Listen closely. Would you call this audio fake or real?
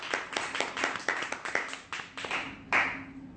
real